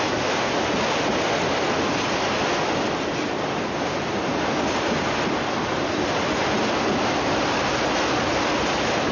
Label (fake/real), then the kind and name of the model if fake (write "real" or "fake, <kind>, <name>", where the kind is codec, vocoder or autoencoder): real